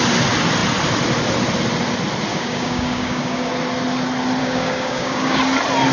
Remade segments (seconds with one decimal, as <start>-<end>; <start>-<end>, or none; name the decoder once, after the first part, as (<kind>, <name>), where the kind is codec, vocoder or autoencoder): 2.3-3.5 (codec, DAC); 4.4-5.4